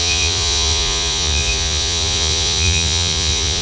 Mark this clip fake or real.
fake